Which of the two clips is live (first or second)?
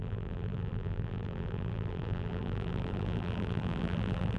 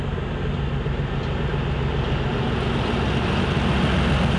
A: second